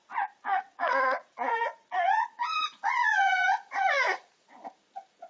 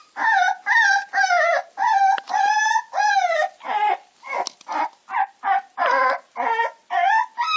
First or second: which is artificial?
first